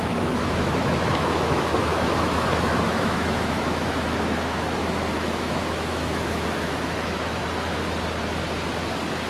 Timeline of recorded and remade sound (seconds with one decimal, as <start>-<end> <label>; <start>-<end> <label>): 0.0-7.4 remade; 7.4-9.3 recorded